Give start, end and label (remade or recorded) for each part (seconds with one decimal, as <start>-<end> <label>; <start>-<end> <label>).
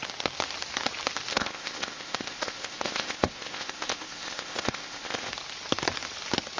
0.0-1.3 recorded; 1.3-5.3 remade; 5.3-6.6 recorded